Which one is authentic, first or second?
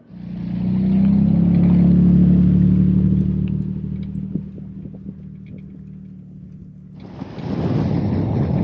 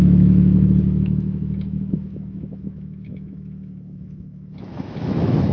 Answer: first